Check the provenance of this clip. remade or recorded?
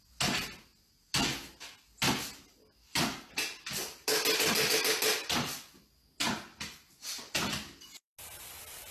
recorded